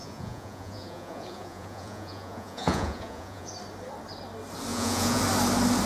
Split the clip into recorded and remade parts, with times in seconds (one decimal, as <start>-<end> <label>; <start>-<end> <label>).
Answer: 0.0-3.5 remade; 3.5-4.7 recorded; 4.7-5.2 remade; 5.2-5.9 recorded